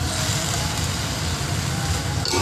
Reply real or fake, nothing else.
real